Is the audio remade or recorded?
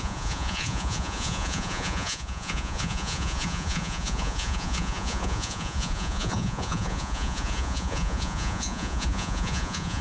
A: remade